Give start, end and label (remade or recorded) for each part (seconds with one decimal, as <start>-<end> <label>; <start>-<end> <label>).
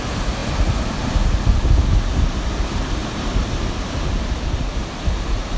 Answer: 0.0-5.6 recorded